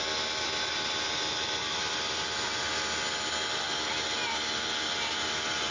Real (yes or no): yes